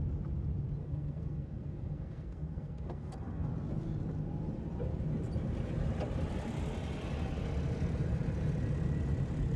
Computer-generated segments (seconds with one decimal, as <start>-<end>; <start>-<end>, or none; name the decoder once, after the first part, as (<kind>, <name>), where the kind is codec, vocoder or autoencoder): 0.8-3.5 (codec, SNAC)